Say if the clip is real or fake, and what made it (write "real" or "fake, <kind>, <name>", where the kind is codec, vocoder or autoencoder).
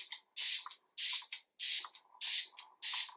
real